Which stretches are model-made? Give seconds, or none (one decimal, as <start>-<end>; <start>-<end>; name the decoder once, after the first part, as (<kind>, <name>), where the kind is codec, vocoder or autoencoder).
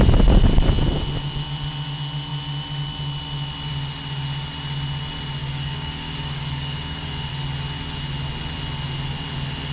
5.4-7.3 (codec, DAC)